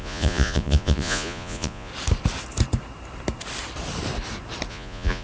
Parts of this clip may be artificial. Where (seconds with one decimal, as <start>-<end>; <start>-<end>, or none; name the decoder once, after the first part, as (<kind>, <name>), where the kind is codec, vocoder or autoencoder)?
0.0-1.9 (vocoder, Vocos); 4.7-5.2